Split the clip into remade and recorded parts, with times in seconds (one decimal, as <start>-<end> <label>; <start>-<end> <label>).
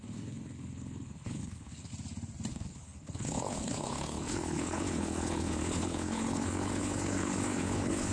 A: 0.0-1.9 remade; 1.9-2.5 recorded; 2.5-8.1 remade